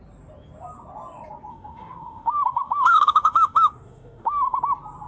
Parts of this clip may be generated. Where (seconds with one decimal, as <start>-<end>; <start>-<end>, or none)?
1.5-4.6